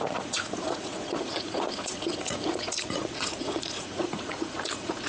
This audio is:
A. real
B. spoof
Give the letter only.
B